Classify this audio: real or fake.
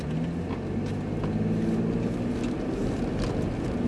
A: real